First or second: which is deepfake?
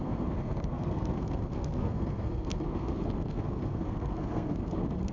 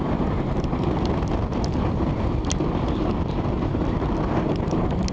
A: first